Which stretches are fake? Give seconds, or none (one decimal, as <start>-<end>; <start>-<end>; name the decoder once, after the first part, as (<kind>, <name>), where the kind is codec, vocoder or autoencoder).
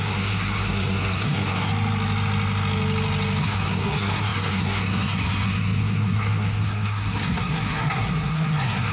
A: 0.0-1.7 (codec, SNAC); 3.4-8.9